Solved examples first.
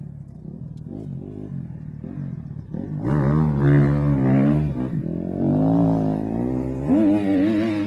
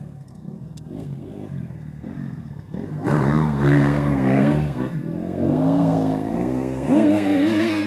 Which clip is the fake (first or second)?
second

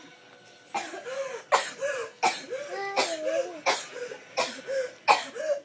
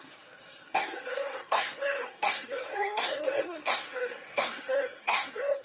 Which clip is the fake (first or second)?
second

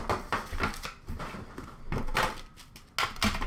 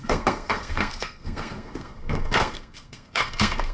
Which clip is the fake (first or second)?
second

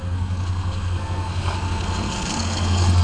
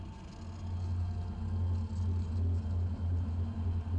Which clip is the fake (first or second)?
first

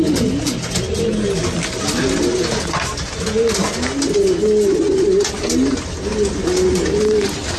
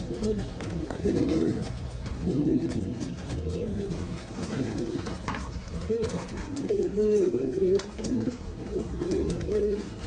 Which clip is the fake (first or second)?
second